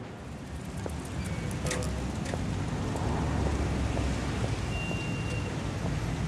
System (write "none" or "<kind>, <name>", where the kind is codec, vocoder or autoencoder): none